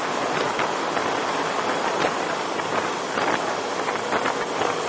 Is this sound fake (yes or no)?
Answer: no